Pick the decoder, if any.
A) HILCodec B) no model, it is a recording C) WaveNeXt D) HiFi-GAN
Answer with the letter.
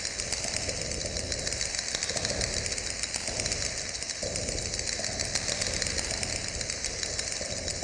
B